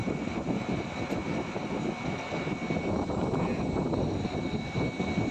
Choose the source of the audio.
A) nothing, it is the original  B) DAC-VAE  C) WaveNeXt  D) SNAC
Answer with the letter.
A